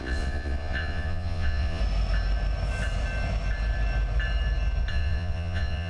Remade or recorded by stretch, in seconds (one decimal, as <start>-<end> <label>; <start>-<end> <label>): 0.0-1.8 remade; 1.8-4.9 recorded; 4.9-5.9 remade